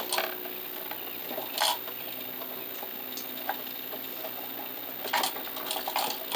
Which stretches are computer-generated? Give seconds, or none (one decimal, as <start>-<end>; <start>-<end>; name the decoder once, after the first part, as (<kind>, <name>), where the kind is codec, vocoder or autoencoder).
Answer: none

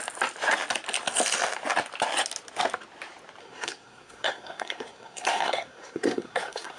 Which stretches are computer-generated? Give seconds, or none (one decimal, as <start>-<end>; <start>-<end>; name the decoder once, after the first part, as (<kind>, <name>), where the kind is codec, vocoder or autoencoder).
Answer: 3.4-6.8 (codec, SNAC)

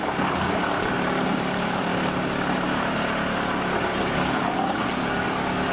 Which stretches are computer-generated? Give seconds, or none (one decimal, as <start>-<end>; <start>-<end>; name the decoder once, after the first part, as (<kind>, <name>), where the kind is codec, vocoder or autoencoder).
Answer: 0.0-1.9 (codec, DAC); 4.0-5.7